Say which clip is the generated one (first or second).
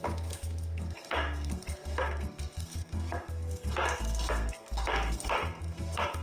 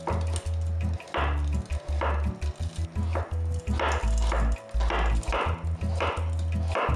first